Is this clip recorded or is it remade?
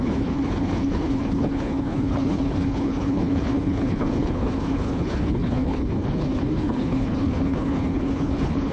remade